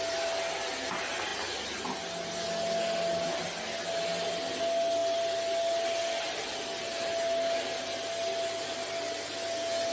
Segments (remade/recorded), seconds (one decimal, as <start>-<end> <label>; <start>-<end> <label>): 0.0-9.9 recorded